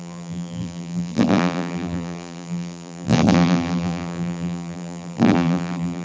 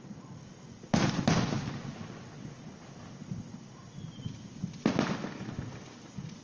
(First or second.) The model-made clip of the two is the first